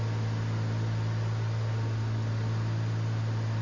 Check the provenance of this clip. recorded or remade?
recorded